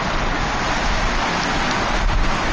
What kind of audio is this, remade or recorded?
recorded